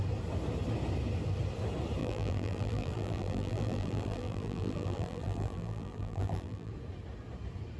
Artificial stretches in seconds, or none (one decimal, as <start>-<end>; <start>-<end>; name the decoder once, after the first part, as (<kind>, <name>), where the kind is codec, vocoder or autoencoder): 2.0-6.7 (vocoder, BigVGAN v2)